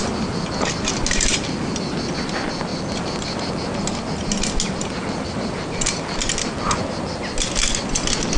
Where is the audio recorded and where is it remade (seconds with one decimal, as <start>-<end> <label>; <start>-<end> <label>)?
0.0-8.4 recorded